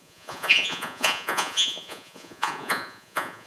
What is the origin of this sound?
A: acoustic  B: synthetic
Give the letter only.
B